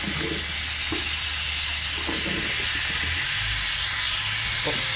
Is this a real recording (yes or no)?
yes